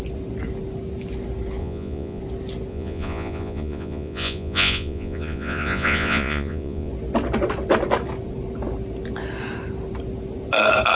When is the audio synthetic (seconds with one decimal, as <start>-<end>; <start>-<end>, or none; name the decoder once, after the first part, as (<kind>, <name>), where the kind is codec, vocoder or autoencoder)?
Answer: 1.6-2.2 (vocoder, Vocos); 2.7-6.9